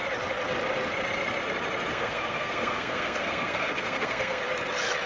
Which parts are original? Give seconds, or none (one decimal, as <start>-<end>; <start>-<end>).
0.0-1.9; 4.4-5.1